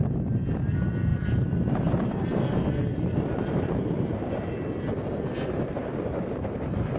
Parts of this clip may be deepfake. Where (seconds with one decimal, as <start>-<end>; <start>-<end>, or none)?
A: 1.1-2.4; 2.8-7.0